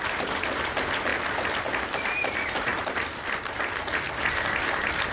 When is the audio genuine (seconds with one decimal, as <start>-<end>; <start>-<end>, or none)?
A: 0.0-5.1